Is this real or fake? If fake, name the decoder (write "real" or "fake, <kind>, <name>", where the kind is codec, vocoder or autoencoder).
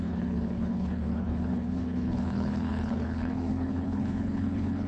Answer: fake, codec, HILCodec